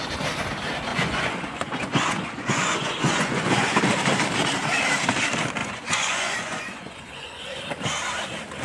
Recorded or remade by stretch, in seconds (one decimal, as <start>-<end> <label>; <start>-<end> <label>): 0.0-0.9 recorded; 0.9-3.8 remade; 3.8-5.6 recorded; 5.6-7.6 remade; 7.6-8.6 recorded